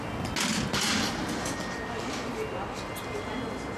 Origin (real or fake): real